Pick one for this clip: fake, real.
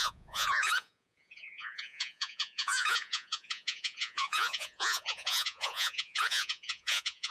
fake